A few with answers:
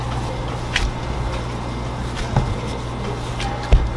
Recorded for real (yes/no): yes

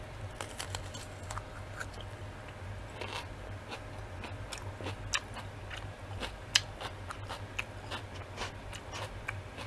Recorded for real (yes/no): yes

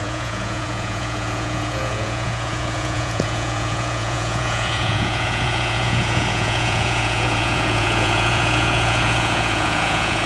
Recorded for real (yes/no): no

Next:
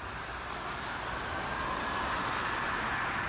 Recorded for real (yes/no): yes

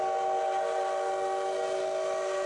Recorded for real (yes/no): yes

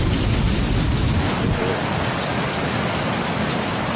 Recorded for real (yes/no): yes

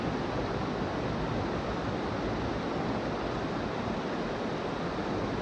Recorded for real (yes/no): yes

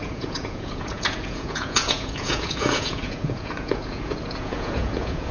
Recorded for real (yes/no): no